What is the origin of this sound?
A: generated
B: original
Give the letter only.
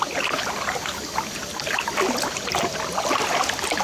B